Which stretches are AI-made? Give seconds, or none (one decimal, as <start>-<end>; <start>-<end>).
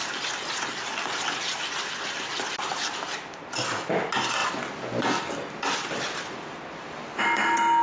none